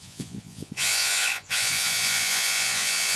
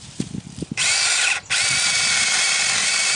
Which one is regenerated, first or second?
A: first